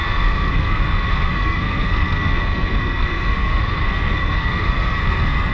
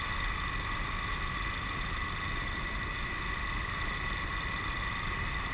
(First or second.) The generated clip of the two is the first